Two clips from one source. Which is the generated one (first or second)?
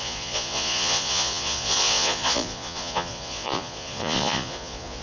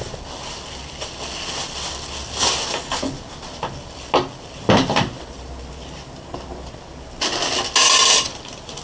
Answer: first